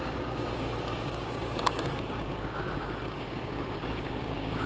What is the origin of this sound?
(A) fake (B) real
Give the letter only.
A